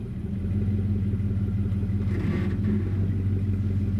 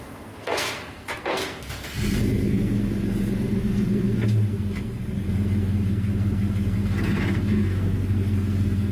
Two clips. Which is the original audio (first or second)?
first